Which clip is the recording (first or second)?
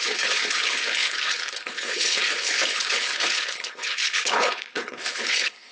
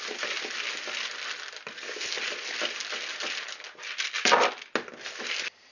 second